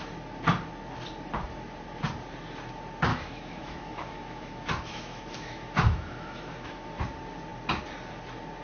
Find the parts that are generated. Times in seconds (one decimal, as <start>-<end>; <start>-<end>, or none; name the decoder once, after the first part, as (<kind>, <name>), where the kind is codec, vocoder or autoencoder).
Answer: 3.1-7.0 (autoencoder, DAC-VAE)